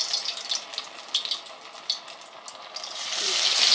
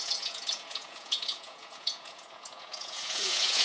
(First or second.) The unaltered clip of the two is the first